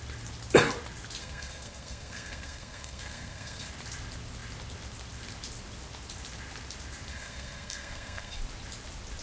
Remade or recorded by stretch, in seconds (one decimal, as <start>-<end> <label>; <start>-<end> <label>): 0.0-1.2 recorded; 1.2-3.7 remade; 3.7-7.1 recorded; 7.1-8.4 remade; 8.4-9.2 recorded